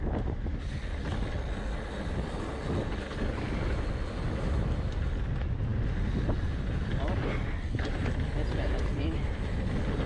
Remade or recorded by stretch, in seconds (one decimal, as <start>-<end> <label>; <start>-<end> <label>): 0.0-10.1 recorded